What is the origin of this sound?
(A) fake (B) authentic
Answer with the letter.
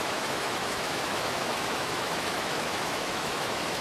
A